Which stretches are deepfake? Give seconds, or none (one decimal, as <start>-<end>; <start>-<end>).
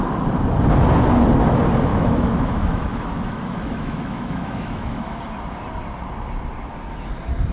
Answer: 1.9-5.2